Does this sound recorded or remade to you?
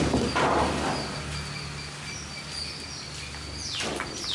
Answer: recorded